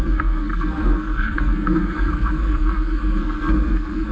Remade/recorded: remade